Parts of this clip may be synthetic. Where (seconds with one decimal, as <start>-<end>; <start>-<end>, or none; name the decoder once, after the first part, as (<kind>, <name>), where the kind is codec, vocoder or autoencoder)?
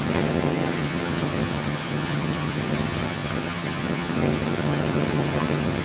0.0-5.8 (vocoder, HiFi-GAN)